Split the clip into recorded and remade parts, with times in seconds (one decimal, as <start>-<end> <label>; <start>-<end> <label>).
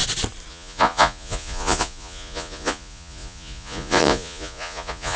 0.0-0.5 recorded; 0.5-5.2 remade